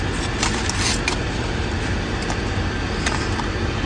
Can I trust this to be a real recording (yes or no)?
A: yes